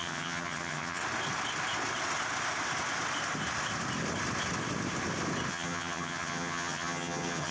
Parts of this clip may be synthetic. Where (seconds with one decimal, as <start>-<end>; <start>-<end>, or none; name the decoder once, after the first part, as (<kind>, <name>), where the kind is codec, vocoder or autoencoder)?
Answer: 0.0-1.0 (vocoder, HiFi-GAN); 5.5-7.5